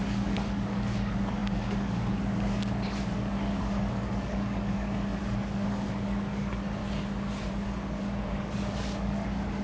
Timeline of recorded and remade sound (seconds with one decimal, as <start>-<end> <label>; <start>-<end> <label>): 0.0-6.8 remade; 6.8-7.5 recorded; 7.5-9.6 remade